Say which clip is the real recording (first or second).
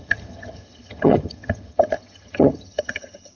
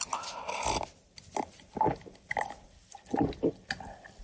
second